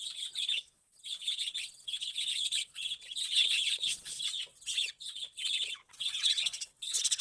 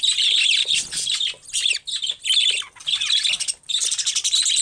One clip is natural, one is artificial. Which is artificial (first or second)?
first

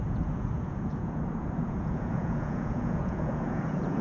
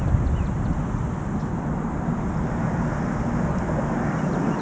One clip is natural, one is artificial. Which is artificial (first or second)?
first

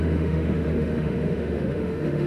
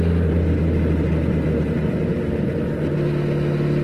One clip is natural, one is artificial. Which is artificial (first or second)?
first